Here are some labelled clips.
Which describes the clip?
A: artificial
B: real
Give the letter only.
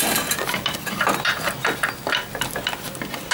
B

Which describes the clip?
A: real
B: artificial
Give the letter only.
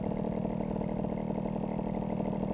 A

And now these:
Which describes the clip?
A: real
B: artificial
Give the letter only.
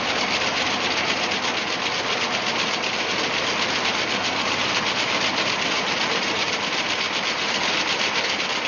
A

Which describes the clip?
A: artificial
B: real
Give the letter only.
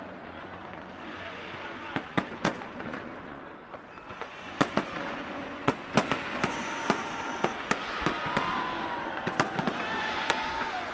A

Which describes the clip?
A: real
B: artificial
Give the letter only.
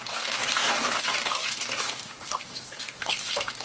B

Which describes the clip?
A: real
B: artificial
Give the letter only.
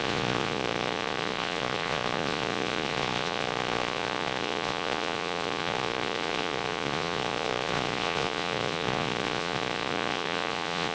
B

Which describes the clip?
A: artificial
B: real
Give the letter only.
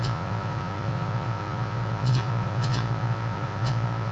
A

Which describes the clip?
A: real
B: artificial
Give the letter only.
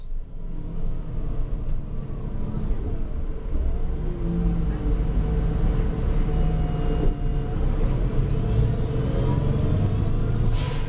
A